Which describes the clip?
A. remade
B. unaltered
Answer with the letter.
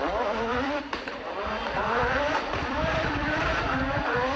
A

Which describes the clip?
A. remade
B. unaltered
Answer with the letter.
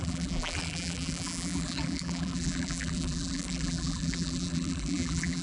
A